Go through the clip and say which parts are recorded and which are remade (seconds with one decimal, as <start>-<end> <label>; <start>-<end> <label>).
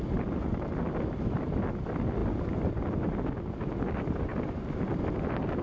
0.0-5.6 recorded